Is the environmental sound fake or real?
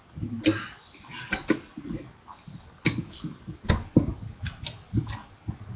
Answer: real